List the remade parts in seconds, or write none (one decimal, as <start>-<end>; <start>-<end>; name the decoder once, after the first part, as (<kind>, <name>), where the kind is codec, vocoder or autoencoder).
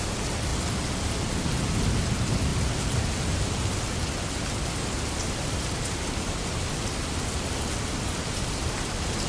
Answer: none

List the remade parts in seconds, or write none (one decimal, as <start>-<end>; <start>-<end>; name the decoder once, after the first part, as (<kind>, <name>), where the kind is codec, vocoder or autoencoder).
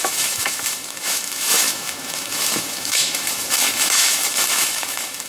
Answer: 0.0-5.3 (autoencoder, DAC-VAE)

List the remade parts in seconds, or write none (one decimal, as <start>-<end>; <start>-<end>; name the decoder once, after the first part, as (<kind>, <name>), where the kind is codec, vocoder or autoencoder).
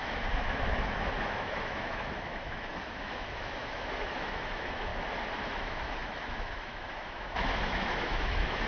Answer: 0.0-4.9 (autoencoder, DAC-VAE); 5.4-8.7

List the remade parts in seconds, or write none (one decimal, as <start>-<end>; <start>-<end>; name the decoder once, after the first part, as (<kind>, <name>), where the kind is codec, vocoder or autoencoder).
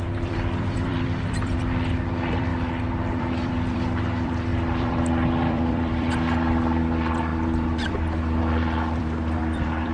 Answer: 0.0-2.5 (vocoder, BigVGAN v2); 3.2-9.9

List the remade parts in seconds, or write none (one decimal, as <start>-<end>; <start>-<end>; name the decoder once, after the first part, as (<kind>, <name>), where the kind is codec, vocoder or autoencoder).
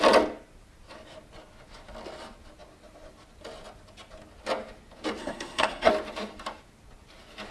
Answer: 5.2-5.9 (codec, SNAC)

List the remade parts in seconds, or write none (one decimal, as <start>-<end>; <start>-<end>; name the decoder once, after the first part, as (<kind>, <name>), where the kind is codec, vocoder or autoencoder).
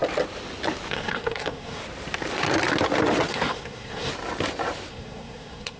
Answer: 0.9-1.8 (codec, SNAC); 3.3-4.1; 4.9-5.8